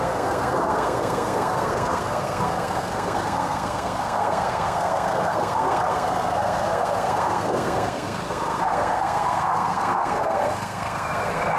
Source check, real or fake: fake